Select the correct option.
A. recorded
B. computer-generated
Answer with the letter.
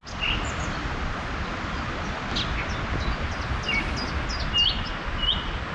A